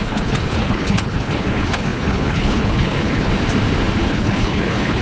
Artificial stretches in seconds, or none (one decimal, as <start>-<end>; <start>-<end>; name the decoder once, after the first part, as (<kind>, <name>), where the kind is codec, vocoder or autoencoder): 0.0-3.3 (codec, HILCodec); 4.0-5.0